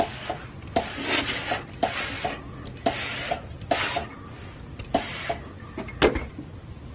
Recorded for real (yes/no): yes